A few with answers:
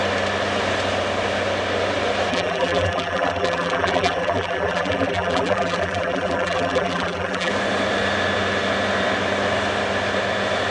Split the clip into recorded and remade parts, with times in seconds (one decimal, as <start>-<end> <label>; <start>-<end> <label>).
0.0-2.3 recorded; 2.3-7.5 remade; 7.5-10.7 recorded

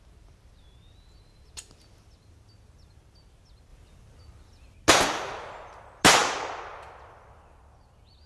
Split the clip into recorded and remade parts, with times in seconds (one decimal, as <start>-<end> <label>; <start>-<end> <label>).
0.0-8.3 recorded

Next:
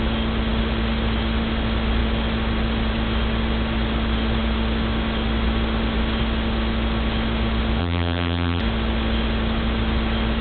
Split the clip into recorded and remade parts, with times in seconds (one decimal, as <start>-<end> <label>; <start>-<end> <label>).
0.0-7.8 recorded; 7.8-8.6 remade; 8.6-10.4 recorded

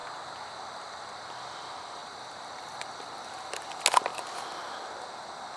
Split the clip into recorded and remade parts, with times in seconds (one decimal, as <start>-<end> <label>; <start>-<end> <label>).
0.0-2.0 recorded; 2.0-3.3 remade; 3.3-4.1 recorded; 4.1-5.0 remade; 5.0-5.6 recorded

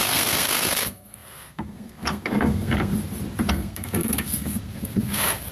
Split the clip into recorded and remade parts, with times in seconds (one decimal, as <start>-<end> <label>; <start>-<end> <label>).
0.0-2.9 remade; 2.9-3.5 recorded; 3.5-5.5 remade

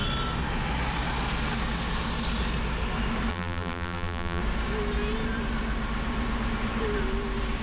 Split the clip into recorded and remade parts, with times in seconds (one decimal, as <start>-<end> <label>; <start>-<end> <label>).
0.0-3.3 recorded; 3.3-4.4 remade; 4.4-7.6 recorded